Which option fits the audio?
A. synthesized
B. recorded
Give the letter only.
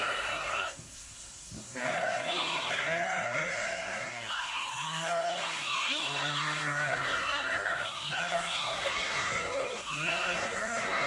A